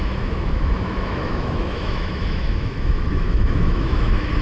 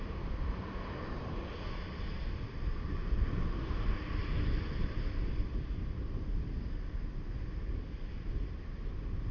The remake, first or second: first